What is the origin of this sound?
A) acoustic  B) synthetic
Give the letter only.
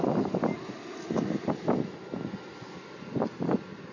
A